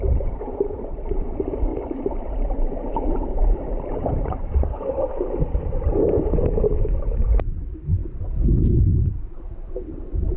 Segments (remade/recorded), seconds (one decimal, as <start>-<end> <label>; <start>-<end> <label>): 0.0-8.0 remade; 8.0-9.0 recorded; 9.0-10.4 remade